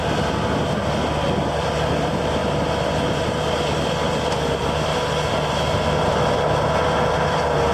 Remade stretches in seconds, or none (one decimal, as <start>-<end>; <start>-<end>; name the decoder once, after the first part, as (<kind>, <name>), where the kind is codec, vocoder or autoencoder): none